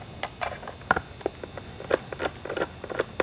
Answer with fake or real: real